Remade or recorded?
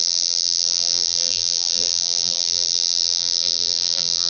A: remade